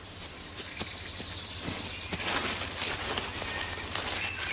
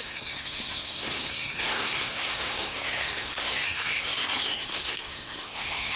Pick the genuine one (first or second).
first